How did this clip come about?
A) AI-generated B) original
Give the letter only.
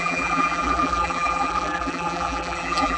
A